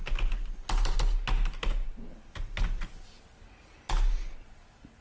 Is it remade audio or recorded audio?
recorded